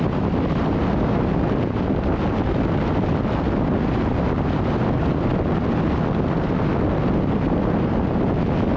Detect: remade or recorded recorded